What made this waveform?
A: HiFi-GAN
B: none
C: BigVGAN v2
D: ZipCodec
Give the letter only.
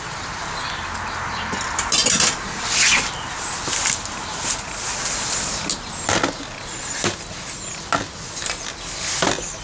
B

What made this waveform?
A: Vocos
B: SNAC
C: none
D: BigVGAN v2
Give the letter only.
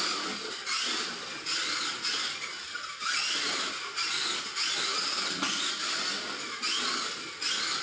C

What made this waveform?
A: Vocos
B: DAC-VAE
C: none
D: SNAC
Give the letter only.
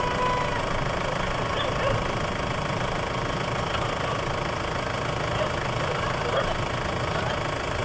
C